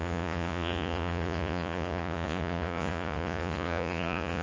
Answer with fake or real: fake